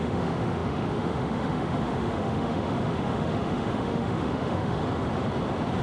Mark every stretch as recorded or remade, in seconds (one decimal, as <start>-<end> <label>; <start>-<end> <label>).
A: 0.0-4.8 remade; 4.8-5.8 recorded

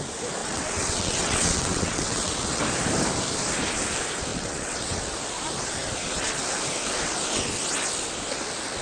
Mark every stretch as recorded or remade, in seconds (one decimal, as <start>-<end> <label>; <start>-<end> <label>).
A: 0.0-0.4 recorded; 0.4-2.6 remade; 2.6-4.3 recorded; 4.3-5.0 remade; 5.0-8.8 recorded